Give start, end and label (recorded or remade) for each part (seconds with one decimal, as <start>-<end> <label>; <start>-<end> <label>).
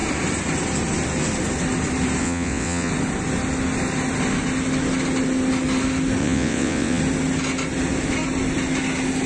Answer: 0.0-2.2 recorded; 2.2-2.9 remade; 2.9-6.2 recorded; 6.2-7.0 remade; 7.0-9.3 recorded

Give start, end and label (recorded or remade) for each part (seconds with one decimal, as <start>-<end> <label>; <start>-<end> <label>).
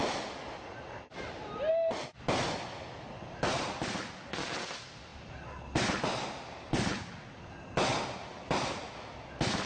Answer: 0.0-9.7 recorded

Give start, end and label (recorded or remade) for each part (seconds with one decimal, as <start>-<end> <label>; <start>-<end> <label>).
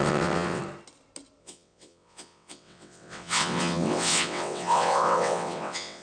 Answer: 0.0-0.6 remade; 0.6-1.4 recorded; 1.4-6.0 remade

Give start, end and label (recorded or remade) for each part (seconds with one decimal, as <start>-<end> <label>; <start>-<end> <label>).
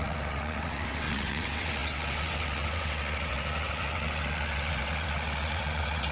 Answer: 0.0-6.1 remade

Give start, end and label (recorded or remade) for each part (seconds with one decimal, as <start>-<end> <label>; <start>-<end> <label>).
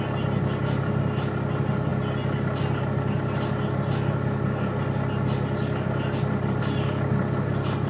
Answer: 0.0-7.9 recorded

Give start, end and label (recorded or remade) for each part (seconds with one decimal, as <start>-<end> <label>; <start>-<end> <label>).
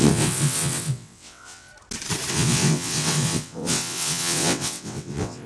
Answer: 0.0-1.7 remade; 1.7-2.3 recorded; 2.3-5.5 remade